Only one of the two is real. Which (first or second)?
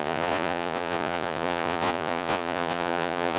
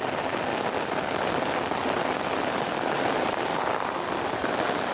second